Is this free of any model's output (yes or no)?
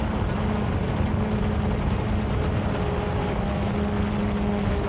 yes